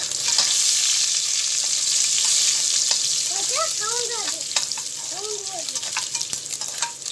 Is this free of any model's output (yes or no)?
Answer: yes